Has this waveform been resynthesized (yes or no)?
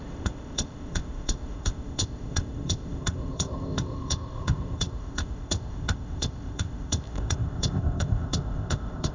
yes